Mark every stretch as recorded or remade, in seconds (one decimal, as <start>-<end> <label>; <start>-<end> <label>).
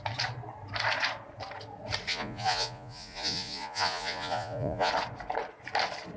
0.0-2.1 recorded; 2.1-4.9 remade; 4.9-6.2 recorded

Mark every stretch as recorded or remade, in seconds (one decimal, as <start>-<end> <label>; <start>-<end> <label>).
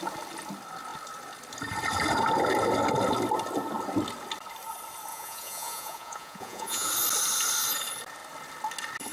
0.0-5.1 recorded; 5.1-6.9 remade; 6.9-9.1 recorded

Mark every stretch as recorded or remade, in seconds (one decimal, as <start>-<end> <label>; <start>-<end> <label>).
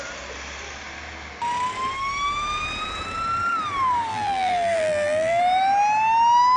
0.0-4.1 recorded; 4.1-5.4 remade; 5.4-6.6 recorded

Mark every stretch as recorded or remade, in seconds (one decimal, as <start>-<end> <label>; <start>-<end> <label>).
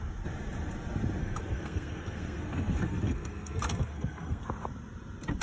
0.0-1.2 recorded; 1.2-4.4 remade; 4.4-5.4 recorded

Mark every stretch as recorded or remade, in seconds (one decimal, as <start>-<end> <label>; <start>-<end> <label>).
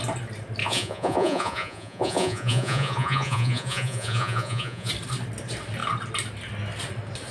0.0-0.6 recorded; 0.6-4.9 remade; 4.9-7.3 recorded